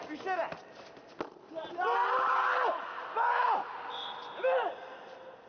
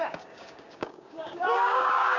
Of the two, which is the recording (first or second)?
first